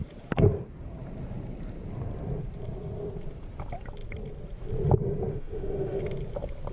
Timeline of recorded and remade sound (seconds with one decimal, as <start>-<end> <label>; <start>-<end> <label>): 0.0-5.3 recorded; 5.3-6.0 remade; 6.0-6.7 recorded